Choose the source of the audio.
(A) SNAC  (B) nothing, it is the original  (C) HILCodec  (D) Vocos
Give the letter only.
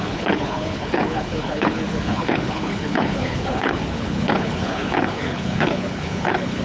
C